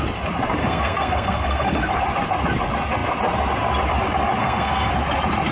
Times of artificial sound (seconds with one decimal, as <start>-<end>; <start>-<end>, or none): 0.6-1.9; 4.4-4.9